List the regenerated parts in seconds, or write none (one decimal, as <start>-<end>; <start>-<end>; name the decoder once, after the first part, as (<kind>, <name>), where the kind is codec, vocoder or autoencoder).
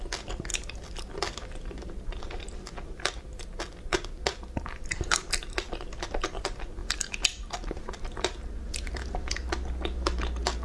0.5-1.0 (vocoder, BigVGAN v2); 6.8-8.0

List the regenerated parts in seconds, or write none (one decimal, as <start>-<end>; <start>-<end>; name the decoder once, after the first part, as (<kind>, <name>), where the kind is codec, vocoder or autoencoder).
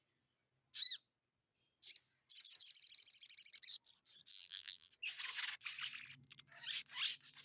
4.3-4.9 (vocoder, BigVGAN v2)